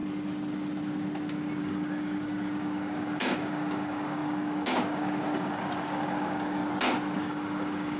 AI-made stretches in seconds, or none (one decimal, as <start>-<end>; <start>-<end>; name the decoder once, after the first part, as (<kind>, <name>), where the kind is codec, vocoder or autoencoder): 1.6-6.6 (codec, DAC); 7.2-8.0